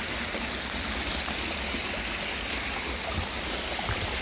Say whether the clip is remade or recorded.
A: recorded